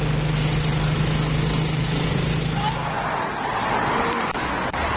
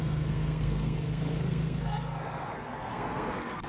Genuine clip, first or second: first